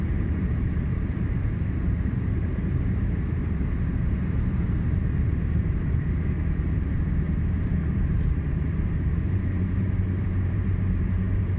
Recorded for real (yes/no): no